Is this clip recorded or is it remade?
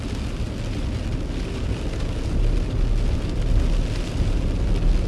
recorded